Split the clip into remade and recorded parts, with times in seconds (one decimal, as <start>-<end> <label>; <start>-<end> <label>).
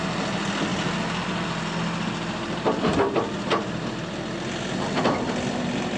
0.0-6.0 recorded